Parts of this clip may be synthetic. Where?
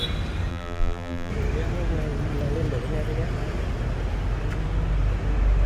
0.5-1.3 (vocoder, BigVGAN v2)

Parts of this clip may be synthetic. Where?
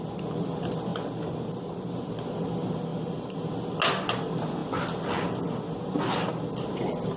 2.9-3.5 (vocoder, BigVGAN v2)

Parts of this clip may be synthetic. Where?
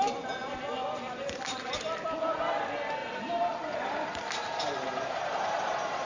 3.0-6.1 (vocoder, BigVGAN v2)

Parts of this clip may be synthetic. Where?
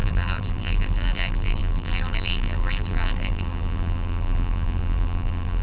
0.0-5.6 (vocoder, BigVGAN v2)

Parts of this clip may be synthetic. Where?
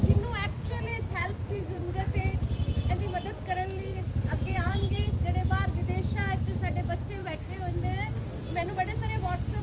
0.9-2.9 (vocoder, BigVGAN v2); 3.9-5.1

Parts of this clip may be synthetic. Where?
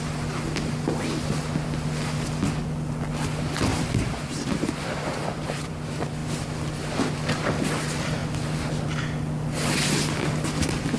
3.7-5.7 (vocoder, BigVGAN v2)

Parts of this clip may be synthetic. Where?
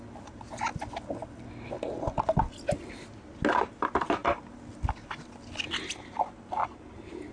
4.2-4.7 (vocoder, BigVGAN v2); 6.6-7.3